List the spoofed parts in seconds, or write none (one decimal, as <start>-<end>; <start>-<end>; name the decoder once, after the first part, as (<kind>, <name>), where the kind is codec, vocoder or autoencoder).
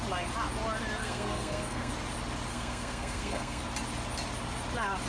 1.0-1.9 (codec, SNAC); 2.5-3.6